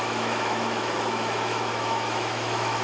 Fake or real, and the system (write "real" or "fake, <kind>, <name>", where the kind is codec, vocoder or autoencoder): fake, autoencoder, DAC-VAE